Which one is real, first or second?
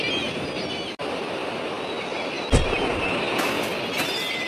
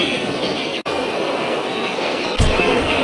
first